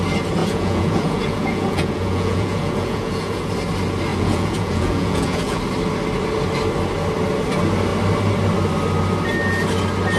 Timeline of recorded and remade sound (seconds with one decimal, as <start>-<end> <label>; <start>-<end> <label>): 0.0-0.4 recorded; 0.4-3.5 remade; 3.5-4.1 recorded; 4.1-5.6 remade; 5.6-10.2 recorded